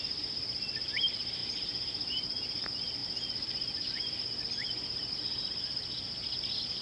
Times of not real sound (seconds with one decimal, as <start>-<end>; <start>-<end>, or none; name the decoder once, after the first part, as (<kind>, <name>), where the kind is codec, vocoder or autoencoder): none